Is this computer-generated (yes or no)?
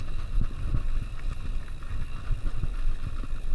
no